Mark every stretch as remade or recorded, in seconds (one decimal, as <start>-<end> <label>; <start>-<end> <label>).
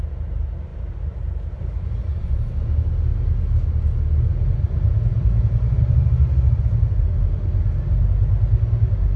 0.0-0.7 recorded; 0.7-1.9 remade; 1.9-5.1 recorded; 5.1-7.1 remade; 7.1-9.2 recorded